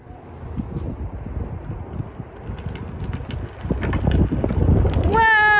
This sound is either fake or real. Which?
real